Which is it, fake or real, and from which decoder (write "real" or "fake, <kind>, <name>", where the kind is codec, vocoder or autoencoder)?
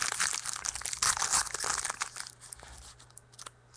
real